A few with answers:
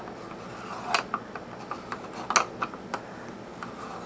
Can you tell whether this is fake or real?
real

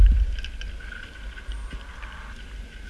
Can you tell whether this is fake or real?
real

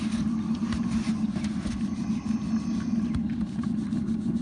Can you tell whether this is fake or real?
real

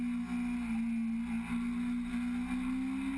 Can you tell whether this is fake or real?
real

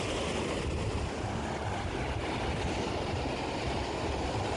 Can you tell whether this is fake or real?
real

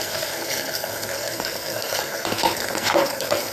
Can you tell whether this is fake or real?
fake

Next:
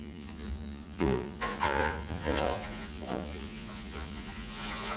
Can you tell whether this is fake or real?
fake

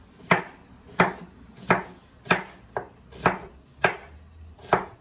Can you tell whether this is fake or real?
real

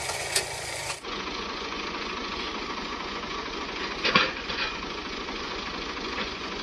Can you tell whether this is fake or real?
fake